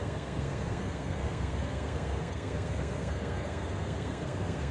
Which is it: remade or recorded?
remade